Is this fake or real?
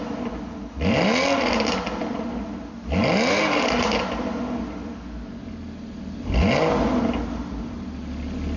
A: real